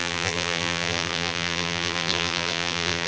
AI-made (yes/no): yes